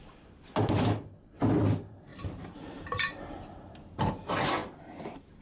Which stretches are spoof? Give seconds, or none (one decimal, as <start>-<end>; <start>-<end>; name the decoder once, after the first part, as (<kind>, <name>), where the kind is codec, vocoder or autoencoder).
2.1-4.1 (vocoder, BigVGAN v2); 4.6-5.4